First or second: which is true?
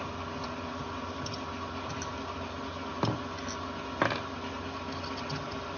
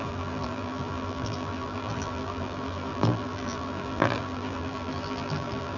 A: first